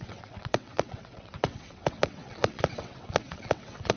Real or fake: fake